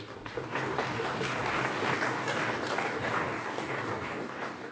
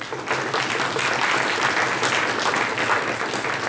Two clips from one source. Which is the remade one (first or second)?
first